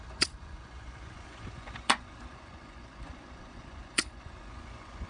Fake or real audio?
fake